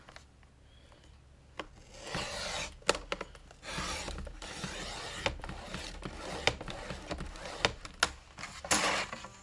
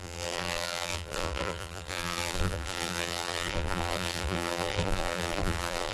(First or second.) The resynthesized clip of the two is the second